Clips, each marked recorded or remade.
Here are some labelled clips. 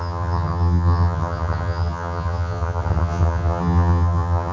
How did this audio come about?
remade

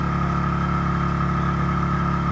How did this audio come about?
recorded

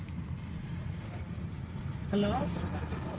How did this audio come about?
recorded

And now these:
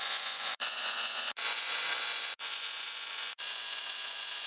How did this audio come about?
remade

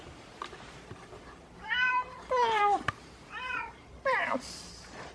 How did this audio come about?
remade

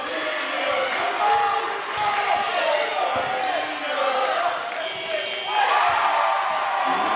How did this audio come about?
recorded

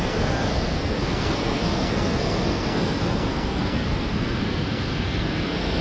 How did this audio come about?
remade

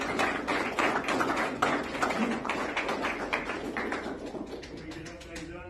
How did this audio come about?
remade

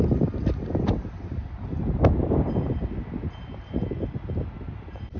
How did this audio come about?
recorded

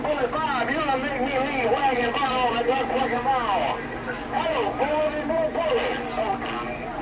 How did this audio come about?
recorded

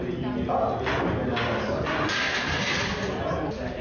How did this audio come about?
recorded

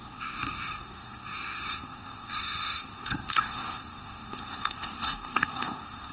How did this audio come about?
remade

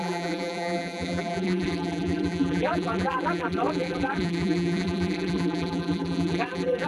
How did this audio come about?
remade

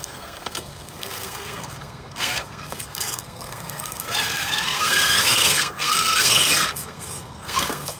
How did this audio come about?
remade